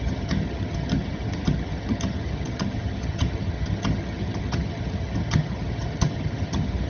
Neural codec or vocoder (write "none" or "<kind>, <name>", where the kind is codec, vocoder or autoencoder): vocoder, HiFi-GAN